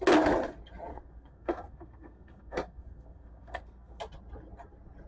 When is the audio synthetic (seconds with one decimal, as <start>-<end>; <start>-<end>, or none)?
0.9-4.0